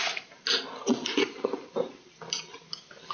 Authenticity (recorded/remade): recorded